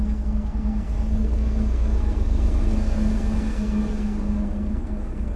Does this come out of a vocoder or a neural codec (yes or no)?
yes